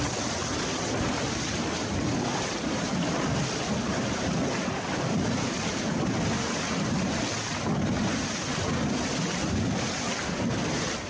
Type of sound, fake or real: fake